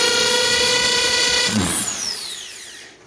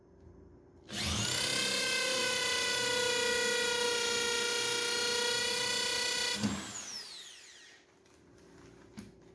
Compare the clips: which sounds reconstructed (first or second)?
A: first